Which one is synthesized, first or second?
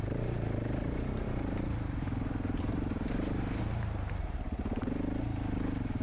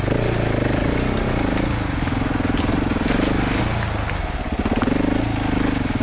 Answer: first